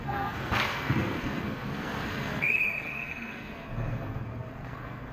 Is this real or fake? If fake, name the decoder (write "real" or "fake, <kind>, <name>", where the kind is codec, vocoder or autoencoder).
fake, codec, SNAC